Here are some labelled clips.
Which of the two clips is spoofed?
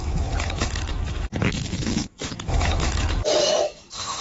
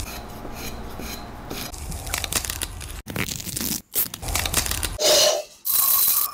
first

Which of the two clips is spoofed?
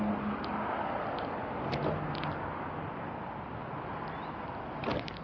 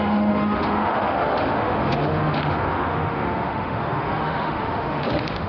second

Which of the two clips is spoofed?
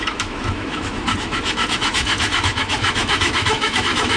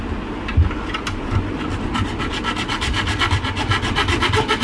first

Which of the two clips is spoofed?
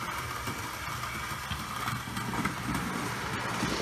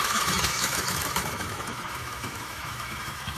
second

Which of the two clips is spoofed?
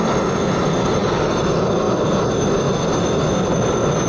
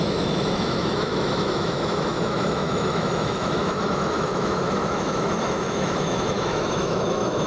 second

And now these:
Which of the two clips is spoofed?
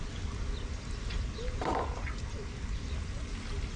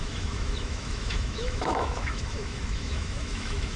second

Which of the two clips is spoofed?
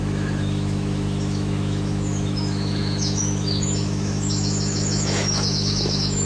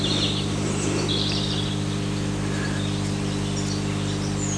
first